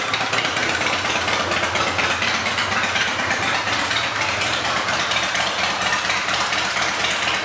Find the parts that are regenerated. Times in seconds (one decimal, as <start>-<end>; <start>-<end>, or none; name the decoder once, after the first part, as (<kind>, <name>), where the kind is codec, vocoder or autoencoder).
0.6-1.1 (vocoder, BigVGAN v2); 2.6-7.0